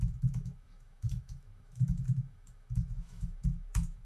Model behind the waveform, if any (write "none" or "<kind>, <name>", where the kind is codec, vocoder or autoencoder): autoencoder, DAC-VAE